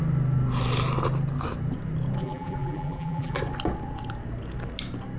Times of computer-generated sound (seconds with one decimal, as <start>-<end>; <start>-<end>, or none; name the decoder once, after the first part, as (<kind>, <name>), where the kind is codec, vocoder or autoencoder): 2.2-3.4 (vocoder, BigVGAN v2)